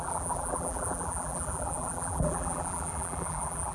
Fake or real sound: fake